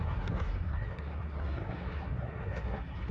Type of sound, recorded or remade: remade